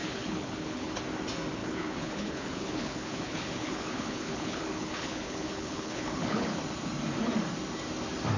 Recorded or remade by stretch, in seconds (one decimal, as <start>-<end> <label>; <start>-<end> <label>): 0.0-1.0 remade; 1.0-1.6 recorded; 1.6-6.6 remade; 6.6-8.4 recorded